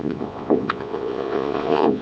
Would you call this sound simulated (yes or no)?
yes